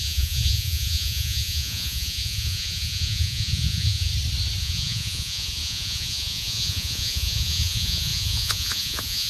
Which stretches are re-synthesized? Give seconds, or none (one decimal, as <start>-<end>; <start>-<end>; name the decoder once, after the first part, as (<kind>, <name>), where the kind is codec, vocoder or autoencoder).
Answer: 0.0-4.1 (vocoder, Vocos); 4.6-9.3